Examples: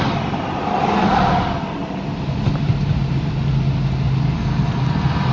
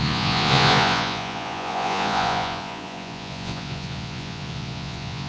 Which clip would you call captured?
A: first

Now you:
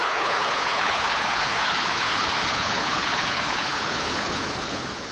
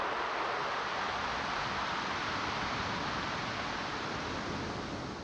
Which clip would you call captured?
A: second